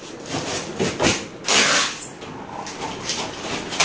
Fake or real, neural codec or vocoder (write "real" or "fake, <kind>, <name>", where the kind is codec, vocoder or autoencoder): real